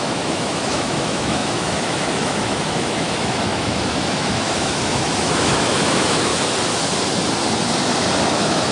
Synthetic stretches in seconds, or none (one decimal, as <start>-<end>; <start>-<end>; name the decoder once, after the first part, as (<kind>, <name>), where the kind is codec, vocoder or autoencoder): 0.0-6.3 (autoencoder, DAC-VAE); 8.2-8.7